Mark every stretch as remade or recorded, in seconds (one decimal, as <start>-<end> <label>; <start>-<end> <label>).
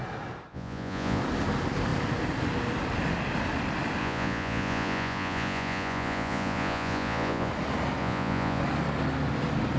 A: 0.0-0.5 recorded; 0.5-1.2 remade; 1.2-4.0 recorded; 4.0-7.5 remade; 7.5-8.0 recorded; 8.0-8.6 remade; 8.6-9.8 recorded